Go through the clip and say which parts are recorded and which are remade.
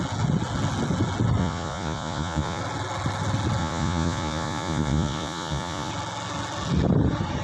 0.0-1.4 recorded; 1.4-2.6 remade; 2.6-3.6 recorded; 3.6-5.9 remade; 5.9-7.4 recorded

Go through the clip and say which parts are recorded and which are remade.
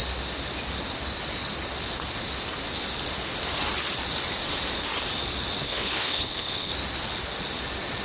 0.0-5.6 recorded; 5.6-6.7 remade; 6.7-8.0 recorded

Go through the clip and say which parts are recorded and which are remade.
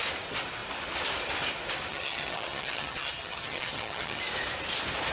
0.0-1.9 recorded; 1.9-4.2 remade; 4.2-5.1 recorded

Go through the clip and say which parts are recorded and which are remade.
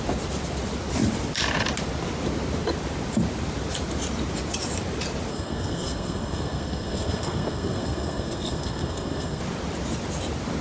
0.0-5.3 recorded; 5.3-9.4 remade; 9.4-10.6 recorded